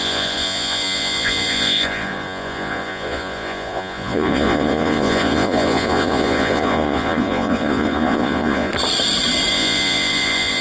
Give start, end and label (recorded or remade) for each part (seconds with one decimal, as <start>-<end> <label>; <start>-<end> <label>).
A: 0.0-8.7 remade; 8.7-9.5 recorded; 9.5-10.6 remade